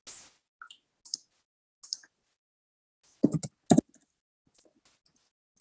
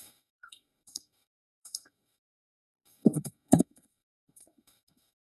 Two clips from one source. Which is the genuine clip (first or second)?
first